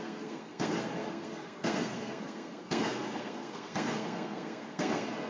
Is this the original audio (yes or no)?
no